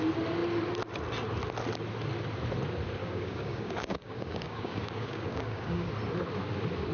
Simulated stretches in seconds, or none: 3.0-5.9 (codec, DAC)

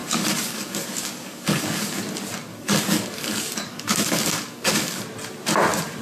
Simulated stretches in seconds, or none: 0.0-2.0 (codec, DAC); 2.5-5.0

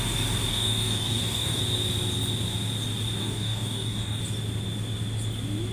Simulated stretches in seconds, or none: 0.5-1.6 (codec, DAC); 3.2-4.2

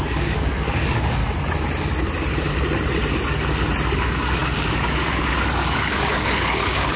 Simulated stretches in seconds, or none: 0.0-1.2 (codec, DAC); 4.0-7.0

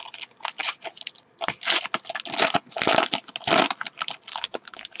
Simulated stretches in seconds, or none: 4.3-5.0 (codec, DAC)